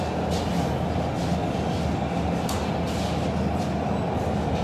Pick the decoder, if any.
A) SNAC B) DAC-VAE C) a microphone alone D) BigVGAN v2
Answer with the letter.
C